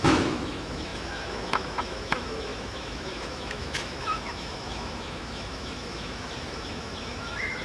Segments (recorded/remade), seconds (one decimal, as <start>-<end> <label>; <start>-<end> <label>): 0.0-7.6 remade